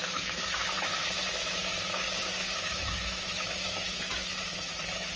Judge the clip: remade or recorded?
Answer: remade